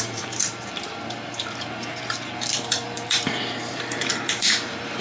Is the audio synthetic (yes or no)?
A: yes